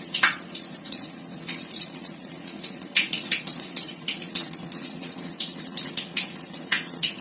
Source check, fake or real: fake